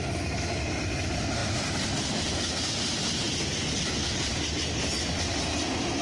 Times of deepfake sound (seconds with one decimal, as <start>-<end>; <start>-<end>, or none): none